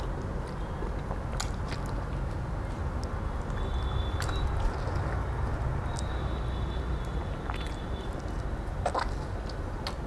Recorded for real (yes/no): yes